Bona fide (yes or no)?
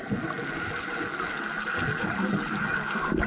yes